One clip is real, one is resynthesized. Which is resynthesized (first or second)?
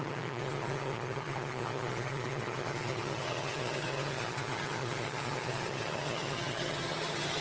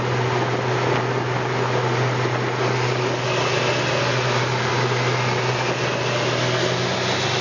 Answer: first